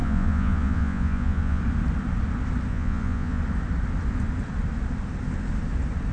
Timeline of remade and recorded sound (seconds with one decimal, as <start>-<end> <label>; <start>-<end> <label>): 0.0-1.6 remade; 1.6-2.7 recorded; 2.7-3.4 remade; 3.4-6.1 recorded